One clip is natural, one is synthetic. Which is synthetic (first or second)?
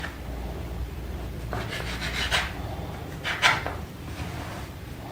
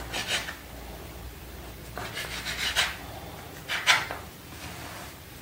first